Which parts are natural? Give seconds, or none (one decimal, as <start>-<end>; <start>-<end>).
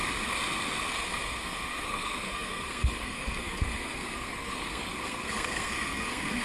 0.0-0.9